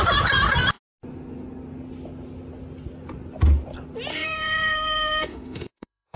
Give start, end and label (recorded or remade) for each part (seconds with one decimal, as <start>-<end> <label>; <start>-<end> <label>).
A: 0.0-4.1 recorded; 4.1-6.2 remade